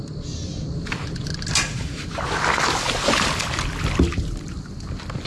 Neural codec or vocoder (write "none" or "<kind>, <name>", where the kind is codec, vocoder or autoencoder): none